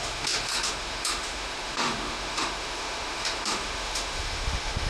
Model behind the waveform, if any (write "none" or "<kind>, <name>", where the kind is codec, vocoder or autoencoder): autoencoder, DAC-VAE